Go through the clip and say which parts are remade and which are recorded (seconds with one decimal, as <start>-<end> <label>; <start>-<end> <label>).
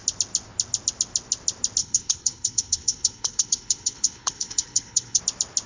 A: 0.0-1.8 recorded; 1.8-5.2 remade; 5.2-5.7 recorded